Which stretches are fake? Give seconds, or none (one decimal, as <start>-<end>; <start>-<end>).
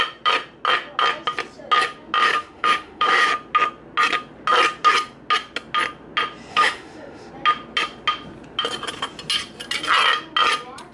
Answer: 2.2-3.3; 6.5-7.3